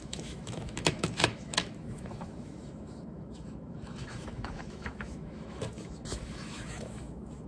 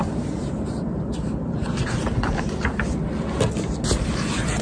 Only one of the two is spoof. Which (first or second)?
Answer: first